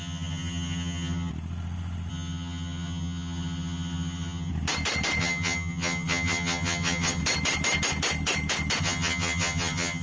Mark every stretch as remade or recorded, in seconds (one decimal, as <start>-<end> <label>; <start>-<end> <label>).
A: 0.0-1.3 remade; 1.3-2.1 recorded; 2.1-4.5 remade; 4.5-5.2 recorded; 5.2-7.2 remade; 7.2-8.8 recorded; 8.8-10.0 remade